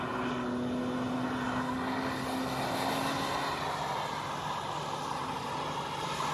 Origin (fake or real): real